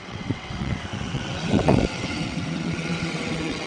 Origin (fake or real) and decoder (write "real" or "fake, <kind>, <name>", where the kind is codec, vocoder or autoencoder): fake, vocoder, WaveNeXt